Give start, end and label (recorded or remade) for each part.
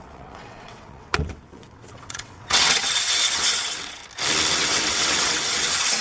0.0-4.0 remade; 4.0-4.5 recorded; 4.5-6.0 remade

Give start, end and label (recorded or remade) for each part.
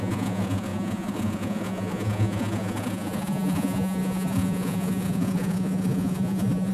0.0-6.7 remade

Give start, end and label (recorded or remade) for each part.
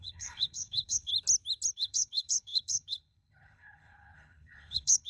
0.0-1.1 remade; 1.1-1.7 recorded; 1.7-5.1 remade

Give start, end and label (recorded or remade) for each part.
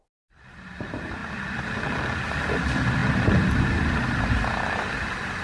0.0-5.4 recorded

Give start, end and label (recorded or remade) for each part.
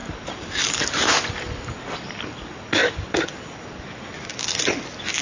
0.0-5.2 recorded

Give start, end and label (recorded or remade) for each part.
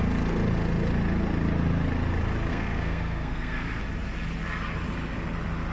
0.0-2.5 recorded; 2.5-3.8 remade; 3.8-5.7 recorded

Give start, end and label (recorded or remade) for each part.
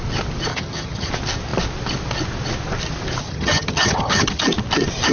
0.0-0.5 recorded; 0.5-1.1 remade; 1.1-3.2 recorded; 3.2-4.4 remade; 4.4-5.1 recorded